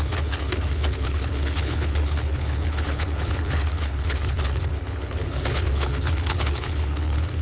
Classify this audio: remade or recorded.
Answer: remade